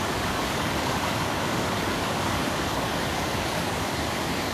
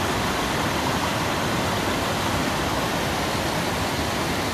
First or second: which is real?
second